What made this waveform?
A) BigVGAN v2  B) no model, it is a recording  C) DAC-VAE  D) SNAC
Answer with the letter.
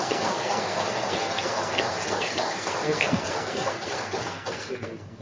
D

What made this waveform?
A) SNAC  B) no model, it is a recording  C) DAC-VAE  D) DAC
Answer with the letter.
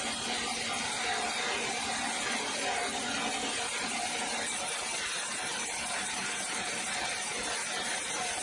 B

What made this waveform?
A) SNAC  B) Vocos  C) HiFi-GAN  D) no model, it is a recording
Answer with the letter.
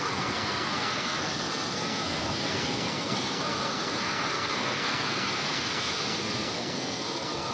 A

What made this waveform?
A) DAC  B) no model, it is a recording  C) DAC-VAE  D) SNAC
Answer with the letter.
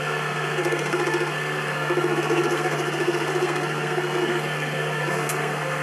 D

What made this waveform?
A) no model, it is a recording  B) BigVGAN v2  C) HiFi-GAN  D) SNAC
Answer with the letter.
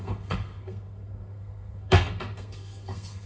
D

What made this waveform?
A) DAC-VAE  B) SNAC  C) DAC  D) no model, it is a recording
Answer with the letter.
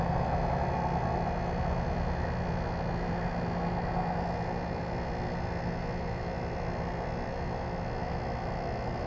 D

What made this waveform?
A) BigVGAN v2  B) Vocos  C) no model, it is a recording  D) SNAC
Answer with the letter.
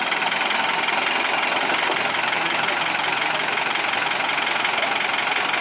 C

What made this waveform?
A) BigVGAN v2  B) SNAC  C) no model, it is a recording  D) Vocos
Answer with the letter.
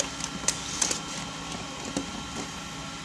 C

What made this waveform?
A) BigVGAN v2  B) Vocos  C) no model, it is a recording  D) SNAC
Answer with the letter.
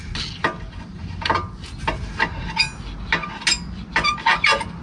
C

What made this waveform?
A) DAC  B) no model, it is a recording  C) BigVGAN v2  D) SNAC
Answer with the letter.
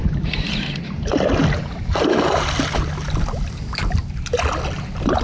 B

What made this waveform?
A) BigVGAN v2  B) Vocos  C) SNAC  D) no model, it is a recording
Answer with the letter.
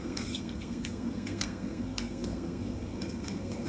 C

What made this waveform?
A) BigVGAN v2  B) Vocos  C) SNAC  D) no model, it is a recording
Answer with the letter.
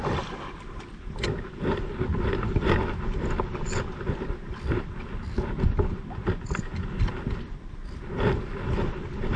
D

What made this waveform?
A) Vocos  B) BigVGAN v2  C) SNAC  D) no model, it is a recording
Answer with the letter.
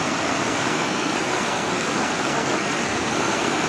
C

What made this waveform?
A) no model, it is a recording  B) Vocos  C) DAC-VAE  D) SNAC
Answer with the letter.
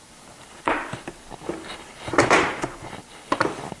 A